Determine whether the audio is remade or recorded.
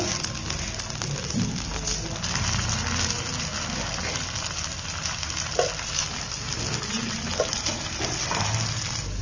recorded